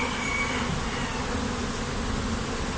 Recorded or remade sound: recorded